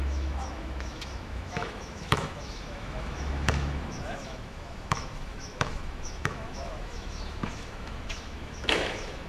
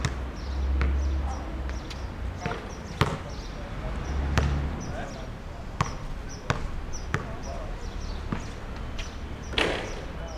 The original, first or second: second